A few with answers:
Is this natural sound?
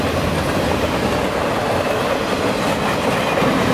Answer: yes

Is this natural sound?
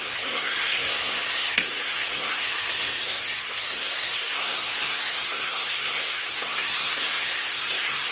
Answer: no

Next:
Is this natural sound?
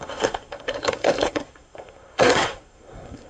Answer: no